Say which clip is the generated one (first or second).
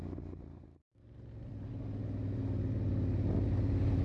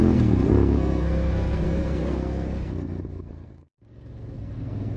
second